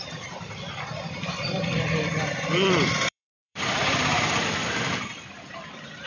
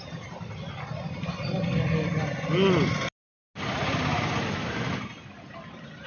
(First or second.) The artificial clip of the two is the first